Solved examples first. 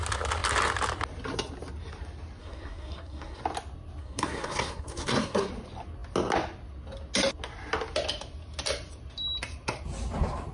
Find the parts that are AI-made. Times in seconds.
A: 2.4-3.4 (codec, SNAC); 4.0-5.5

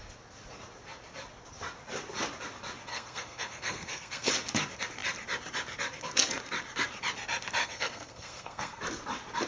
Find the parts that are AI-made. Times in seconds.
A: 2.9-4.3 (codec, SNAC); 7.6-8.8

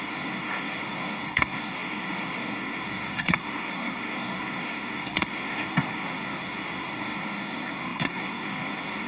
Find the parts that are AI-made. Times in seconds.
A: 0.0-9.1 (codec, SNAC)